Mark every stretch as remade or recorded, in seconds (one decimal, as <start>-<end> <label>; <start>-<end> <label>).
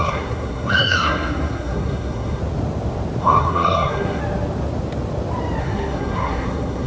0.0-2.4 remade; 2.4-3.2 recorded; 3.2-4.2 remade; 4.2-5.6 recorded; 5.6-6.9 remade